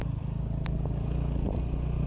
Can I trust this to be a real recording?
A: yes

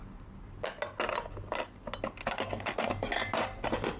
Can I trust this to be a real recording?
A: yes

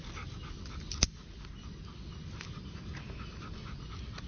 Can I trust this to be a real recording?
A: yes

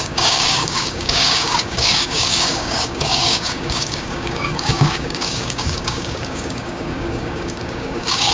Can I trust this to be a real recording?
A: no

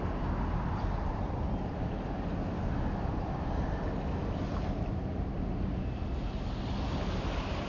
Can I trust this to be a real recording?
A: yes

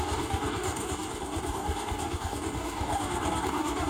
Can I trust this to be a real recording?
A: no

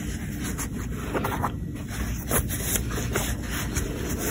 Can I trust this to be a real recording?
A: yes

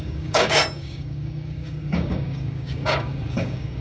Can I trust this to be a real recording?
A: no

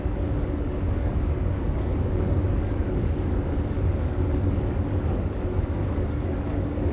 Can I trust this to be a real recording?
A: no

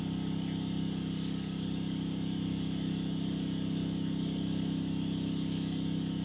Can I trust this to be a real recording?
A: no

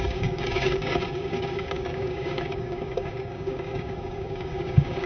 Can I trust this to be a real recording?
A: no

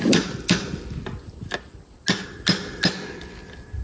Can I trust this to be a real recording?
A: yes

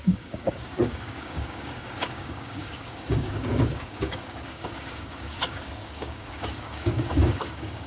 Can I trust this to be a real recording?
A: no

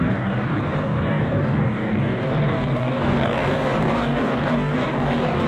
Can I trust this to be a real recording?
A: no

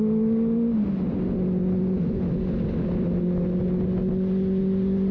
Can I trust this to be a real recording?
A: yes